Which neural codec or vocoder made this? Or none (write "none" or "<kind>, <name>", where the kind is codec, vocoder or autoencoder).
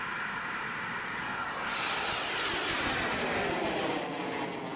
none